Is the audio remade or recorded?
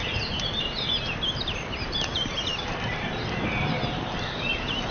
remade